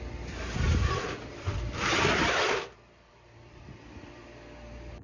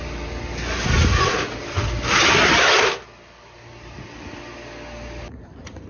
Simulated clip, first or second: first